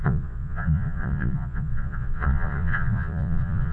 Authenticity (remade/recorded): remade